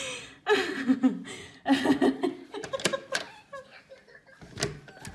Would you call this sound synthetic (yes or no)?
no